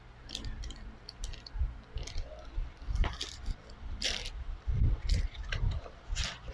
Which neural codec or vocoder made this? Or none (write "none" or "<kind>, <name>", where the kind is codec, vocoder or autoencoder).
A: vocoder, BigVGAN v2